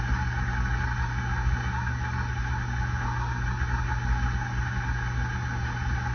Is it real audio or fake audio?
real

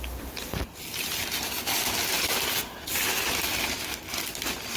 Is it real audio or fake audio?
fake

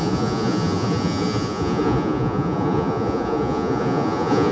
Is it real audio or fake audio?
fake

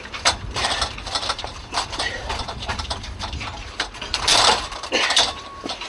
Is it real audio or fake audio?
fake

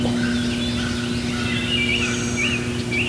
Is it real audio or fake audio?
real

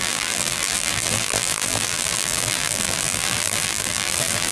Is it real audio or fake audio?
fake